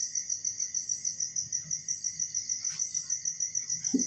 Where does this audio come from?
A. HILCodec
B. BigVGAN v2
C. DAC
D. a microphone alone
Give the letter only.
D